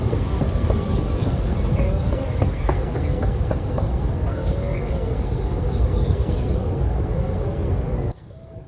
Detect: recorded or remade remade